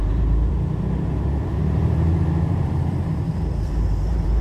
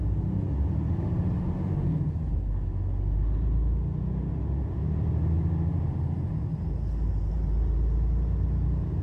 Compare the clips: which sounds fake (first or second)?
first